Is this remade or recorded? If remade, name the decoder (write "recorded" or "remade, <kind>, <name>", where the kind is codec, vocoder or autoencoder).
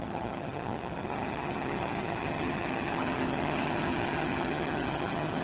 remade, vocoder, HiFi-GAN